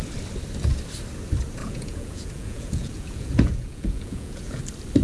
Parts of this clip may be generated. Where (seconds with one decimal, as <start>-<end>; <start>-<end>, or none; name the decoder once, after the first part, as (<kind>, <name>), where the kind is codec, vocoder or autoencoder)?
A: 1.6-4.6 (vocoder, Vocos)